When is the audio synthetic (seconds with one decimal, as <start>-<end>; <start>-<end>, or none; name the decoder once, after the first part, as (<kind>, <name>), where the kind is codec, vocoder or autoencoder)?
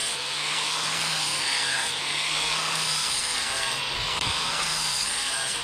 0.0-5.6 (codec, SNAC)